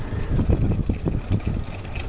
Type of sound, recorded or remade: recorded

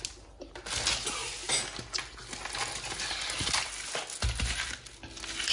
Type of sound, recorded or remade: recorded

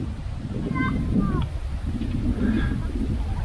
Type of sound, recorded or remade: recorded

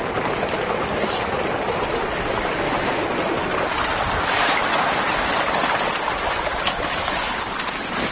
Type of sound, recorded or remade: recorded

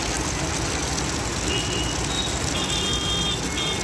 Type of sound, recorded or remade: recorded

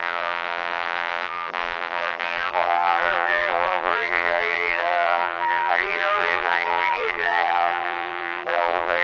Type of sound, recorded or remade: remade